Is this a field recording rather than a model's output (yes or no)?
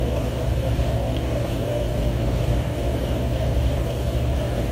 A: no